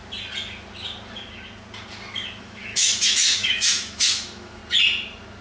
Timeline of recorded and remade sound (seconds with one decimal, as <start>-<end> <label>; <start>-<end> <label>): 0.0-2.4 recorded; 2.4-4.6 remade; 4.6-5.4 recorded